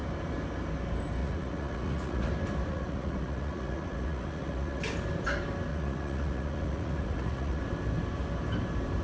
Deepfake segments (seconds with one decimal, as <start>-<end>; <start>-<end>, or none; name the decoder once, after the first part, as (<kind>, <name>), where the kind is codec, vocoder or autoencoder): 1.2-2.3 (vocoder, Vocos); 2.7-4.8; 5.7-7.6